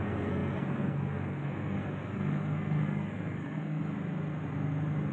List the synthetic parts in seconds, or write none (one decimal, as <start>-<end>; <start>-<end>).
0.0-3.8